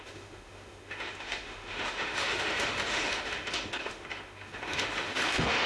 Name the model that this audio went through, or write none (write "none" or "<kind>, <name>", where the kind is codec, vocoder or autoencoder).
autoencoder, DAC-VAE